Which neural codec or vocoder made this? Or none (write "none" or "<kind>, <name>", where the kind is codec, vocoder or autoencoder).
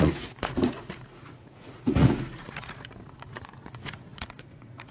vocoder, Vocos